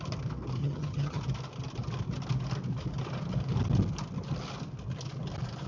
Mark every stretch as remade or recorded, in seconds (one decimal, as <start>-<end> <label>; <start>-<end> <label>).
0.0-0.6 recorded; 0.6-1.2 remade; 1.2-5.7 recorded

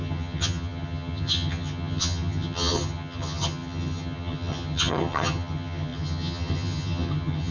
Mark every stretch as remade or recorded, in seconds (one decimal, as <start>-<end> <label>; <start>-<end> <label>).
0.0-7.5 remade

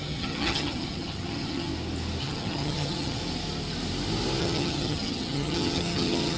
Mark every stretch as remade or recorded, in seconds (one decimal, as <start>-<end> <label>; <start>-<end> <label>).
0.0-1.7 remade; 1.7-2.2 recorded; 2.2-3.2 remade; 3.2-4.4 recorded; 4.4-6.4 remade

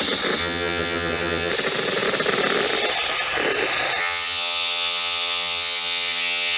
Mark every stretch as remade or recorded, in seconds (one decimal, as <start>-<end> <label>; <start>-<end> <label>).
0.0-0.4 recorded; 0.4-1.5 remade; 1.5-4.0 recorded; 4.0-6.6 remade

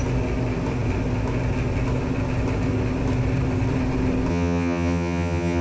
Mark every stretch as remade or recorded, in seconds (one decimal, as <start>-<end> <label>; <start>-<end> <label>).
0.0-4.3 recorded; 4.3-5.6 remade

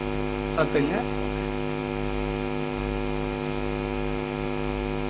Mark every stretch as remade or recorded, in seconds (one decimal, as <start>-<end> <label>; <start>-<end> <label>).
0.0-5.1 recorded

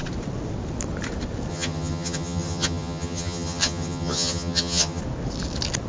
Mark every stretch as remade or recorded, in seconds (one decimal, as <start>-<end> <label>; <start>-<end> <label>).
0.0-1.5 recorded; 1.5-5.0 remade; 5.0-5.9 recorded